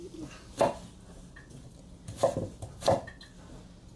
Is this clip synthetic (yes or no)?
no